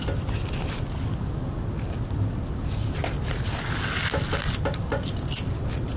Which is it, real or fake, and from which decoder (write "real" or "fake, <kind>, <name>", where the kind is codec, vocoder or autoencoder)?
real